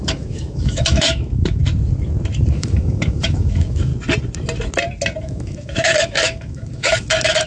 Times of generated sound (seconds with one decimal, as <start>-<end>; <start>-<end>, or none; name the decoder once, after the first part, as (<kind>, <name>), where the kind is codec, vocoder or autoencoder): 0.0-1.6 (autoencoder, DAC-VAE); 2.5-3.9; 5.2-7.5